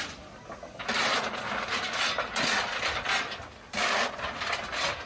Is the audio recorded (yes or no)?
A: yes